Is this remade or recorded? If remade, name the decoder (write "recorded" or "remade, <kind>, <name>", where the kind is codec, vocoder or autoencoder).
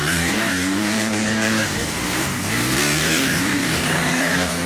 remade, codec, DAC